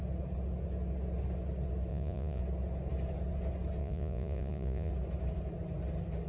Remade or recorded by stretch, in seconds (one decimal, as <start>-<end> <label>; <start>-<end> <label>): 0.0-1.9 recorded; 1.9-2.4 remade; 2.4-3.8 recorded; 3.8-4.9 remade; 4.9-6.3 recorded